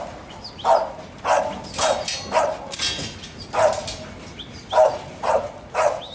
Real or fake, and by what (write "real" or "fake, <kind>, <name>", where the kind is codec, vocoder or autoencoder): real